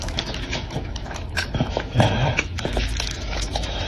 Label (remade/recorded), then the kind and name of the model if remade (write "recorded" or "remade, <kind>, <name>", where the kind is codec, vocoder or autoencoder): remade, autoencoder, DAC-VAE